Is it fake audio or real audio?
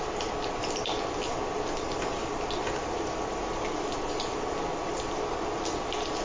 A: real